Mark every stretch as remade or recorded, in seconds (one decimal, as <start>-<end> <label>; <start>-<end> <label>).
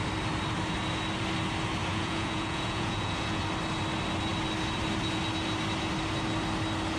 0.0-1.8 recorded; 1.8-3.4 remade; 3.4-7.0 recorded